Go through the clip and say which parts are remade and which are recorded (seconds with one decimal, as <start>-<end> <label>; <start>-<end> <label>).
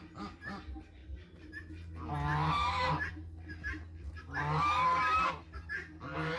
0.0-6.4 recorded